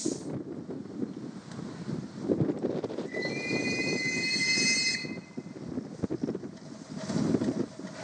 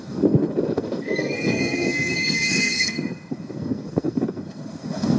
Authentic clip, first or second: first